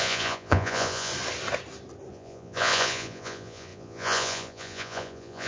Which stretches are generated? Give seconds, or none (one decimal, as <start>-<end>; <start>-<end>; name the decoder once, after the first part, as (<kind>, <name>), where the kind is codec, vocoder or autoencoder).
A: 0.0-1.1 (vocoder, Vocos); 2.1-5.5